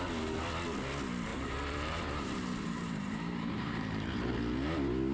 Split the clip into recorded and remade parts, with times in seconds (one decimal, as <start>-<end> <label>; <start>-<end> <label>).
0.0-1.3 recorded; 1.3-4.4 remade; 4.4-5.1 recorded